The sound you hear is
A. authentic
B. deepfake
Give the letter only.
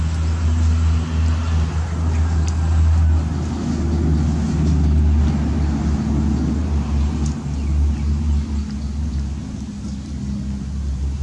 A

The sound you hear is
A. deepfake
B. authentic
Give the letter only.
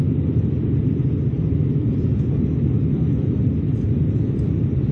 B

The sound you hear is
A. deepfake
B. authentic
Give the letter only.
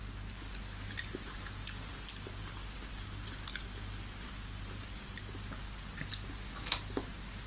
B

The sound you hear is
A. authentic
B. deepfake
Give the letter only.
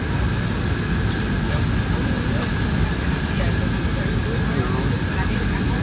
A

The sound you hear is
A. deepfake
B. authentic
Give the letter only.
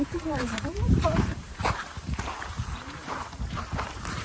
A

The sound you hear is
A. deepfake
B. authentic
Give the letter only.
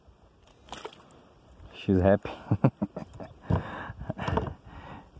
B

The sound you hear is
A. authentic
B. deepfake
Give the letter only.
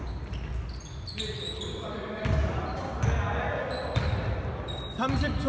A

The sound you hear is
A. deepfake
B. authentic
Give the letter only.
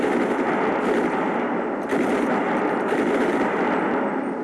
B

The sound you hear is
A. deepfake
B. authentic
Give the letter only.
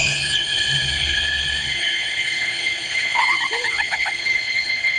A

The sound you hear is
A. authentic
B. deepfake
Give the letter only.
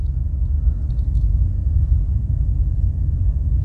A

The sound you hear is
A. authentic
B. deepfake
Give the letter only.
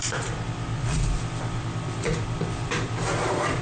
B